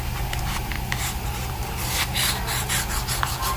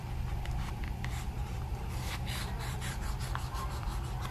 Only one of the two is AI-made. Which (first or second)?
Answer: second